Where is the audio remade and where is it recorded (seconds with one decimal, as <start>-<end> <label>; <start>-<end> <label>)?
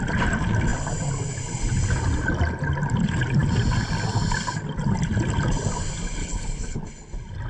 0.0-6.2 recorded; 6.2-6.8 remade; 6.8-7.5 recorded